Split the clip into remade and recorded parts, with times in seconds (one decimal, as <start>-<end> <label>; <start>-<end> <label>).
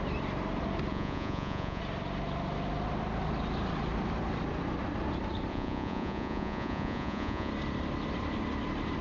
0.0-0.9 recorded; 0.9-1.8 remade; 1.8-5.5 recorded; 5.5-7.5 remade; 7.5-9.0 recorded